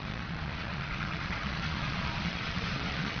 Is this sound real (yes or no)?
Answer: no